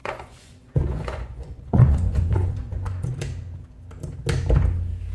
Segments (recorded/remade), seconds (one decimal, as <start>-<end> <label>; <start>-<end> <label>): 0.0-3.1 remade; 3.1-5.1 recorded